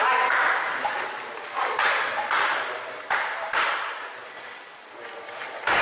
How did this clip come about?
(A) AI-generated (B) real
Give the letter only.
B